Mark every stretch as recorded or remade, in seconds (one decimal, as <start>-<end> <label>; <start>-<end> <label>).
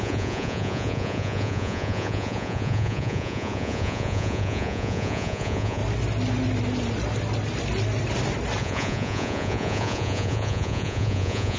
0.0-5.8 remade; 5.8-8.6 recorded; 8.6-11.6 remade